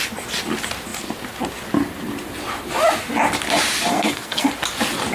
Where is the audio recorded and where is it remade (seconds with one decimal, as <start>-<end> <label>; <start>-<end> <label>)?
0.0-3.9 recorded; 3.9-4.5 remade; 4.5-5.1 recorded